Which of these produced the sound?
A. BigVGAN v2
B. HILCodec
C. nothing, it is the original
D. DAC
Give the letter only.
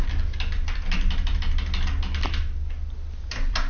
C